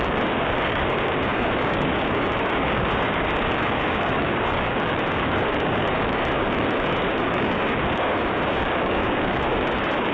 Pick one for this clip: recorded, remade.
remade